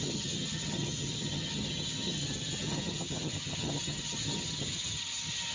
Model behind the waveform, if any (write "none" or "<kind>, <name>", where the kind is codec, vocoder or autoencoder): vocoder, HiFi-GAN